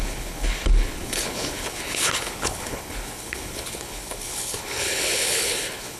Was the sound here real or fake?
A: fake